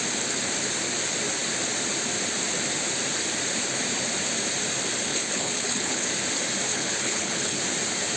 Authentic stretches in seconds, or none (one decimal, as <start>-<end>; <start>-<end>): 0.0-5.1; 6.1-6.7; 7.6-8.2